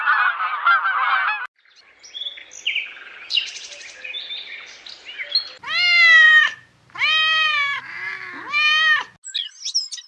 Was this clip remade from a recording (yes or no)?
no